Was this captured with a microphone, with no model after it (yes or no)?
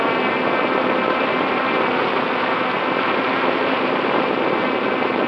yes